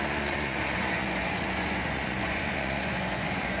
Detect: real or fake fake